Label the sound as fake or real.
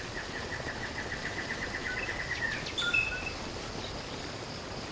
real